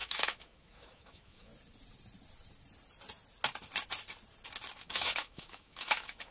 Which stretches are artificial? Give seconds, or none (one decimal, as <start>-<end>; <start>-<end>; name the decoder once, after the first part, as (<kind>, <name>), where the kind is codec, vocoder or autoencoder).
0.0-1.5 (autoencoder, DAC-VAE); 4.8-6.3